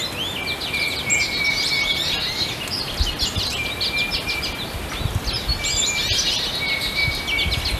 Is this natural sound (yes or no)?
yes